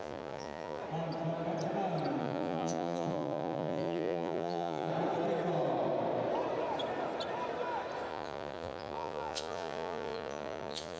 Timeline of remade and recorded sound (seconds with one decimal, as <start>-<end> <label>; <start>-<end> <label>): 0.0-0.8 remade; 0.8-2.2 recorded; 2.2-4.9 remade; 4.9-8.1 recorded; 8.1-11.0 remade